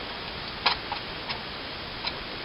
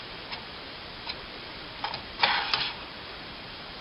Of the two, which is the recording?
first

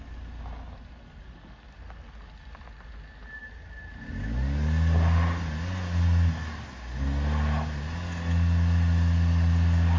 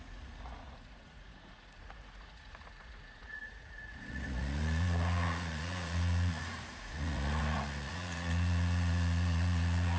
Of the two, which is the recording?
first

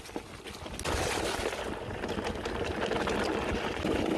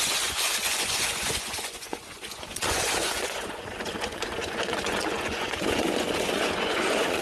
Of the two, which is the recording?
first